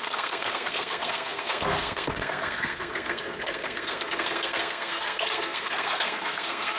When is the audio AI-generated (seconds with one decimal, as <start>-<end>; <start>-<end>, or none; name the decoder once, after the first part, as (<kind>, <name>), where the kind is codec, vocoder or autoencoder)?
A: 0.0-6.8 (codec, SNAC)